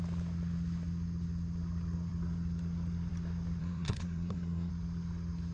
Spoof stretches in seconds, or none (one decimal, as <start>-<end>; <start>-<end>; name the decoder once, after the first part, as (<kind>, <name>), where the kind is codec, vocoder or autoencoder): 3.6-4.7 (codec, SNAC)